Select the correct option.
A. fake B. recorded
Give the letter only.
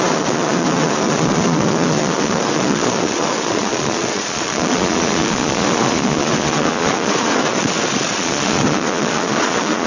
A